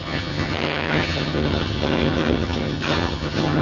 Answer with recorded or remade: remade